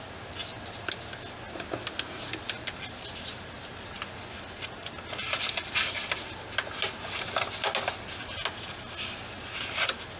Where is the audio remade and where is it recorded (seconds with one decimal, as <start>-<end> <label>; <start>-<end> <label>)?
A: 0.0-10.2 recorded